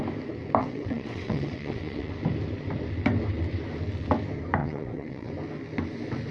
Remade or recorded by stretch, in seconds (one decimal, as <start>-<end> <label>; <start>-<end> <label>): 0.0-0.6 recorded; 0.6-2.1 remade; 2.1-4.6 recorded; 4.6-5.3 remade; 5.3-6.3 recorded